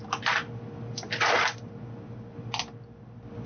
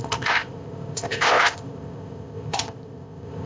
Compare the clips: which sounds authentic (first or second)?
first